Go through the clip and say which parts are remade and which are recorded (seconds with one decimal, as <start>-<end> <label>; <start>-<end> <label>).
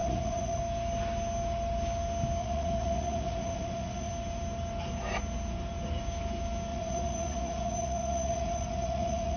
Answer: 0.0-0.6 remade; 0.6-2.4 recorded; 2.4-4.1 remade; 4.1-6.7 recorded; 6.7-9.4 remade